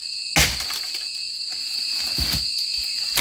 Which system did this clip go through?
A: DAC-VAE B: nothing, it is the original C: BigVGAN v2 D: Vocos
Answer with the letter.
B